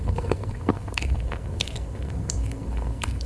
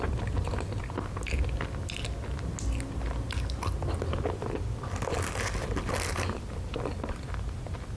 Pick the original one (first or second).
second